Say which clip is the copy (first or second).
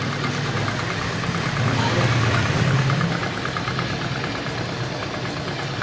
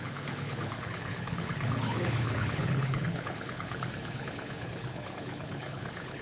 second